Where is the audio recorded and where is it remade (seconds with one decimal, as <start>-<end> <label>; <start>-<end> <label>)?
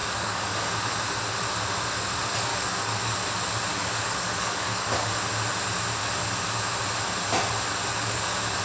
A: 0.0-0.8 remade; 0.8-2.5 recorded; 2.5-3.1 remade; 3.1-3.7 recorded; 3.7-5.1 remade; 5.1-7.9 recorded; 7.9-8.6 remade